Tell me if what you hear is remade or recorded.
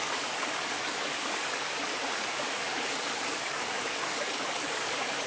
remade